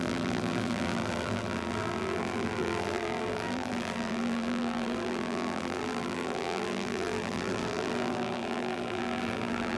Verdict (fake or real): fake